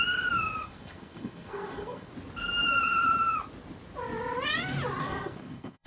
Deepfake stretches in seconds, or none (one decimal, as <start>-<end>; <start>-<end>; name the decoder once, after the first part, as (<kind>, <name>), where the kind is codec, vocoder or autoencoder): 0.6-2.1 (codec, SNAC); 5.0-5.9